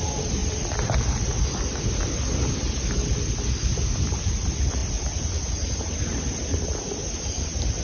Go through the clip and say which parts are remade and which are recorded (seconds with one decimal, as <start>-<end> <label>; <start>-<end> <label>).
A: 0.0-7.8 recorded